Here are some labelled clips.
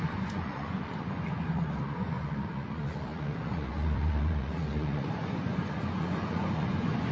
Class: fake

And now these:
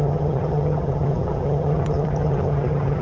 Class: fake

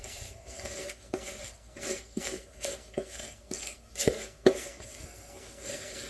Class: fake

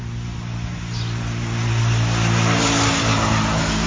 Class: real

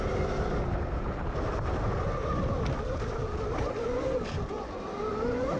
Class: real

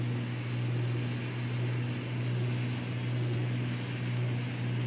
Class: real